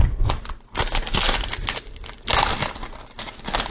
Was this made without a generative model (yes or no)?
yes